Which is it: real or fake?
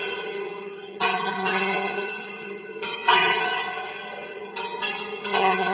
fake